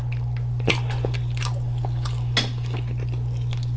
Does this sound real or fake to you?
real